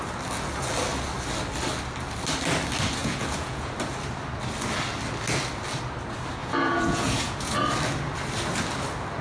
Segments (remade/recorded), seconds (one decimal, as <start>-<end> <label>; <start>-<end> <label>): 0.0-3.0 recorded; 3.0-3.7 remade; 3.7-6.4 recorded; 6.4-7.6 remade; 7.6-9.2 recorded